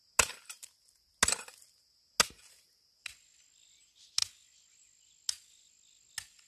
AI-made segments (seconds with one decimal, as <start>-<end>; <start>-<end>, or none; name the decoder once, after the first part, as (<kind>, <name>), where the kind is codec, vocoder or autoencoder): none